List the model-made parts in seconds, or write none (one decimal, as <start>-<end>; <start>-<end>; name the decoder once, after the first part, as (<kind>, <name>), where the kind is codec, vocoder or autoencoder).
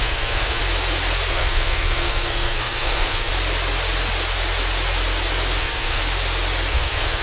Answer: 0.0-0.6 (codec, SNAC); 1.3-3.3; 5.6-6.0; 6.7-7.2